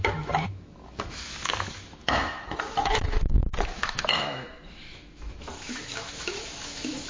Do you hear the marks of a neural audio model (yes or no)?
yes